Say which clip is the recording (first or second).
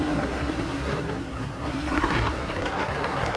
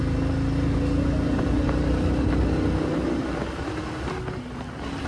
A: second